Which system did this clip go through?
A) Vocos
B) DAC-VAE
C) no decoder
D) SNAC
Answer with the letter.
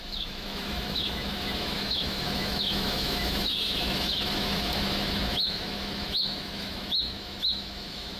B